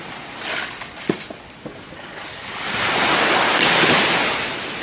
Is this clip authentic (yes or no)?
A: yes